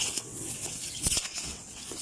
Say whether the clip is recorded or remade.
remade